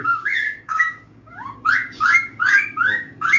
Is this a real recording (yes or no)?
no